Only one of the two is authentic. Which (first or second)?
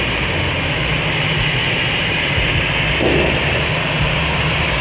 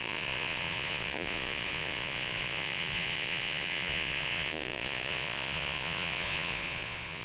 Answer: first